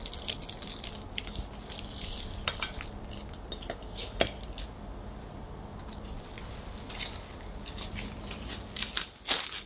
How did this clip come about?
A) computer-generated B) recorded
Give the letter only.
B